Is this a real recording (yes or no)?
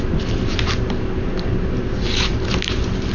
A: yes